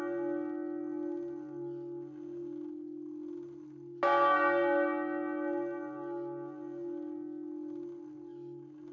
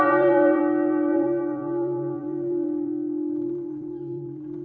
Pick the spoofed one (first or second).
second